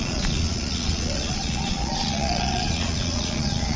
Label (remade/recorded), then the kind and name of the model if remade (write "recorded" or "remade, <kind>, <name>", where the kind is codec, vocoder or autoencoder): remade, vocoder, Vocos